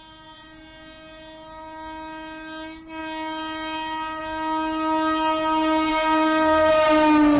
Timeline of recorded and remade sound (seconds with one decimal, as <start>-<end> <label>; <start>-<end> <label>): 0.0-5.9 recorded; 5.9-6.7 remade; 6.7-7.4 recorded